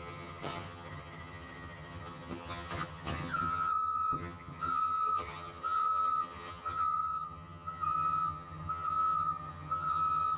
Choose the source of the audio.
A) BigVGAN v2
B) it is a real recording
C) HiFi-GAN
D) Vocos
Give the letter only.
C